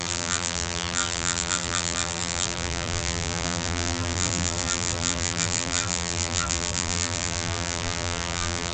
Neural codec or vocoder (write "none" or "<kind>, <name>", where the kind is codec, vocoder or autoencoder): vocoder, BigVGAN v2